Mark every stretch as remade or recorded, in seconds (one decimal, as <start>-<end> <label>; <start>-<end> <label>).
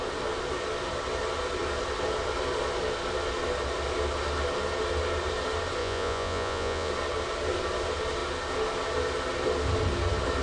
0.0-5.8 recorded; 5.8-6.9 remade; 6.9-10.4 recorded